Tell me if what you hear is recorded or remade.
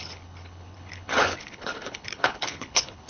remade